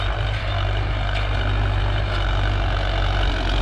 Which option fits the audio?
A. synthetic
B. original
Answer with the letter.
B